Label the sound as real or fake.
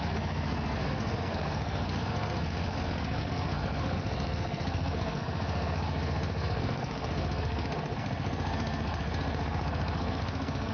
fake